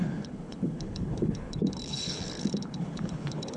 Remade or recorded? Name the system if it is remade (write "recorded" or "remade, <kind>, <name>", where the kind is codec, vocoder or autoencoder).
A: remade, codec, HILCodec